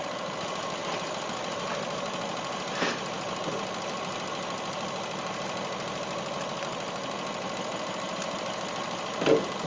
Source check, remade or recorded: recorded